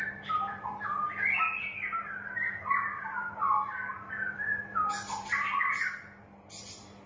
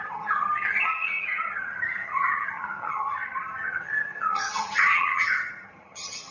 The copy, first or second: second